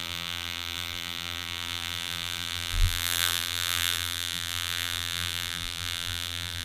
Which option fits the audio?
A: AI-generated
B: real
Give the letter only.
A